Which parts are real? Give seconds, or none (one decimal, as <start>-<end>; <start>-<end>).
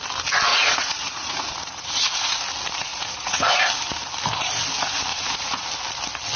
0.0-0.5; 2.4-2.9; 3.6-5.1; 5.7-6.4